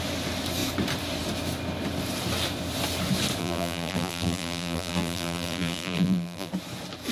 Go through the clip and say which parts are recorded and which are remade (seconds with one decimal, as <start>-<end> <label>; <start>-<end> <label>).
0.0-3.4 recorded; 3.4-6.5 remade; 6.5-7.1 recorded